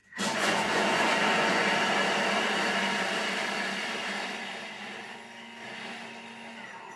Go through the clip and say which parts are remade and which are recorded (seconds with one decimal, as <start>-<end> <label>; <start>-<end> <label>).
0.0-1.7 remade; 1.7-7.0 recorded